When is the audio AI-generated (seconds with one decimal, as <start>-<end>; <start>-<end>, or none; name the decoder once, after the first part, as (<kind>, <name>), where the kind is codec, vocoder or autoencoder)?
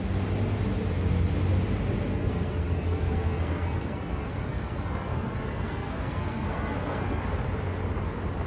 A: 2.1-7.2 (codec, SNAC)